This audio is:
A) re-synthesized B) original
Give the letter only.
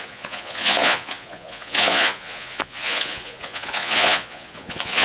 A